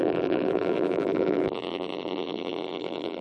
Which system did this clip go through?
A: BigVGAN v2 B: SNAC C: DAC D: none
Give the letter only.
A